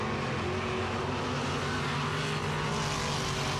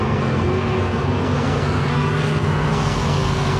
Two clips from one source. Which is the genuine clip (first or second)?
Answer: first